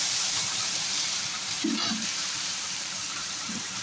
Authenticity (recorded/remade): remade